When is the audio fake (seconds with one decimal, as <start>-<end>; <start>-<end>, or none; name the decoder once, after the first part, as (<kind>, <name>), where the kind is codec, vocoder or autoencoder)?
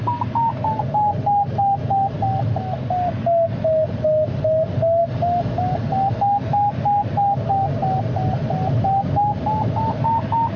none